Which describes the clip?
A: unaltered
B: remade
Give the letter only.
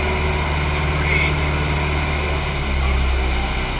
A